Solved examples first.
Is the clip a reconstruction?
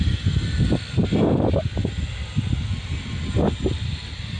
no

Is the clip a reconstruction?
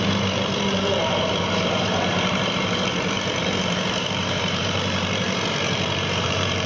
yes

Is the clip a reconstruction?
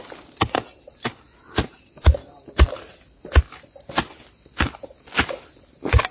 no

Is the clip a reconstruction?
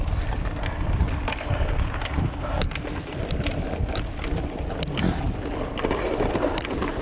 no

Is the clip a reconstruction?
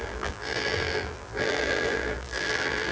yes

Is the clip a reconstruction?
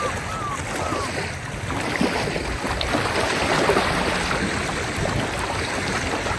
no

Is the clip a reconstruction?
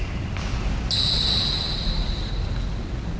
no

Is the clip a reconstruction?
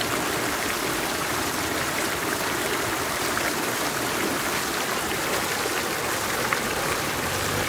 yes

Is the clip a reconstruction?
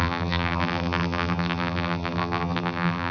yes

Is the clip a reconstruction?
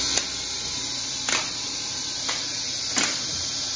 yes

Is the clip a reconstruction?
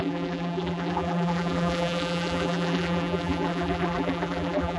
yes